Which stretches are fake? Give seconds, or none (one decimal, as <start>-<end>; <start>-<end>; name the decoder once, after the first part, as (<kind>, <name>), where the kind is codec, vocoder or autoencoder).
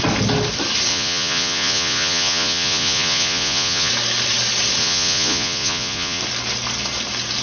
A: 0.9-3.9 (vocoder, Vocos); 4.8-6.2